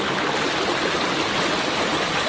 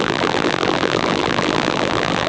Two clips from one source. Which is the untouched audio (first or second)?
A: first